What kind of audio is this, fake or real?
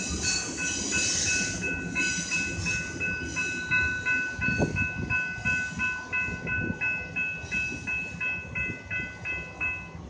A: real